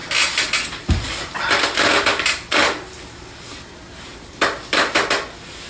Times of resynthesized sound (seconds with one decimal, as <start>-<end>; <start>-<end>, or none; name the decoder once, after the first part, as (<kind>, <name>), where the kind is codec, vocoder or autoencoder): none